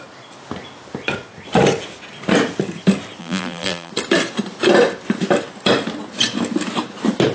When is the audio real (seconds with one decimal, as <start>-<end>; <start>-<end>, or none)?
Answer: 0.0-3.2; 3.9-7.3